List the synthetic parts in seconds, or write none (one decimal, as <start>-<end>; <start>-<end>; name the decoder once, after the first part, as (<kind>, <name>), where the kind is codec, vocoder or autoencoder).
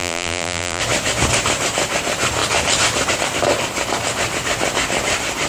0.0-0.8 (vocoder, BigVGAN v2)